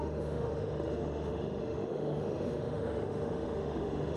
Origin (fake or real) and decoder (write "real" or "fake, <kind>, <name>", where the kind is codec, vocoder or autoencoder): fake, autoencoder, DAC-VAE